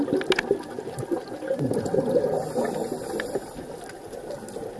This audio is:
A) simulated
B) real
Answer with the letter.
B